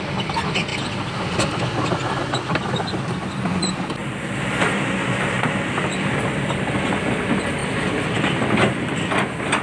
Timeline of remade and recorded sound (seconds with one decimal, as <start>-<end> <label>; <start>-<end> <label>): 0.0-0.7 recorded; 0.7-1.6 remade; 1.6-4.0 recorded; 4.0-6.9 remade; 6.9-7.6 recorded; 7.6-9.1 remade; 9.1-9.6 recorded